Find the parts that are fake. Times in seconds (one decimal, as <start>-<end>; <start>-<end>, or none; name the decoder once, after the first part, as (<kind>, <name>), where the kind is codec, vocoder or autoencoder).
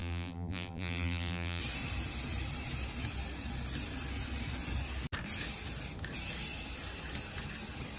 0.0-1.6 (vocoder, BigVGAN v2)